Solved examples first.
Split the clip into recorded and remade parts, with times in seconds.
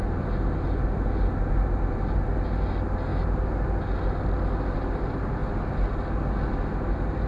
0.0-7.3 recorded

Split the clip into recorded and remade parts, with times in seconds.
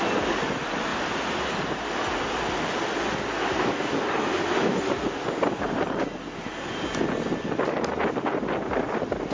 0.0-9.3 recorded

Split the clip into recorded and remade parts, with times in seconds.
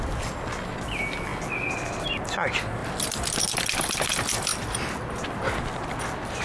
0.0-6.4 recorded